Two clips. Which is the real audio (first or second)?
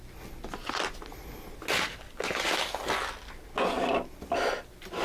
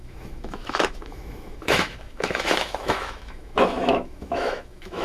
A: first